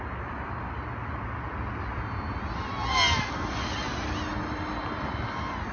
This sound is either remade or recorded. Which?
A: recorded